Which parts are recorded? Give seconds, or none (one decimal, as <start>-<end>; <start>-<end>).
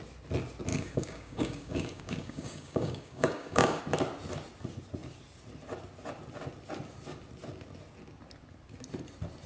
0.0-0.7; 3.8-9.5